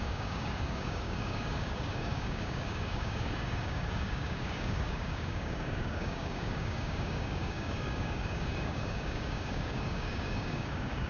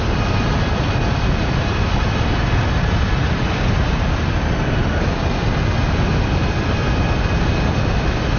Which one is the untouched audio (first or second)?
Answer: second